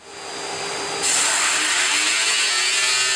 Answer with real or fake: real